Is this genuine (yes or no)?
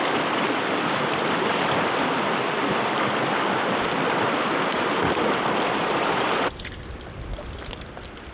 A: no